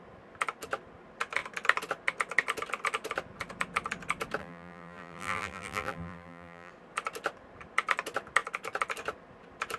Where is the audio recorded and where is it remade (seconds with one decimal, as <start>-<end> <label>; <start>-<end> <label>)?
0.0-4.4 recorded; 4.4-6.7 remade; 6.7-9.8 recorded